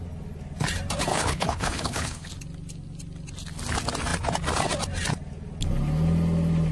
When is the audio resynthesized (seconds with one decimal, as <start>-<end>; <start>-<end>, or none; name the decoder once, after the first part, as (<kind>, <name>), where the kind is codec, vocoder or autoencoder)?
1.1-2.3 (codec, HILCodec)